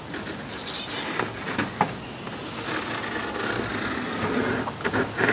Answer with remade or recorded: recorded